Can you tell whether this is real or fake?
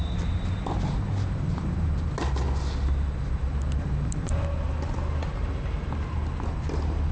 real